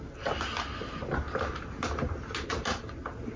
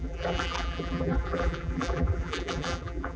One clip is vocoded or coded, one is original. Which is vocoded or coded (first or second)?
second